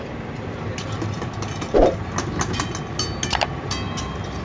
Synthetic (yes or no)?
no